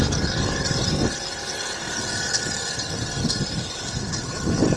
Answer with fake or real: real